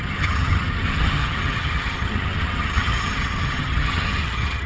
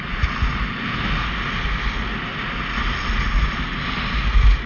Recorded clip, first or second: second